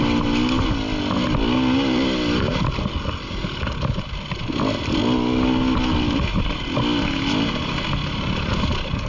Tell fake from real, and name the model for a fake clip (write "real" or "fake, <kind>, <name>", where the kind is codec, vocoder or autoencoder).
real